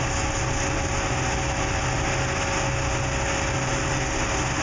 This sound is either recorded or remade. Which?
recorded